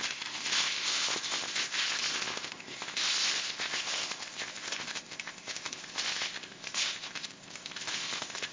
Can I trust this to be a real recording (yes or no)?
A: no